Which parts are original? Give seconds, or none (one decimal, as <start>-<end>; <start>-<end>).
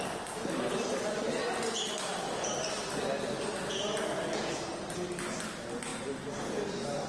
0.0-7.1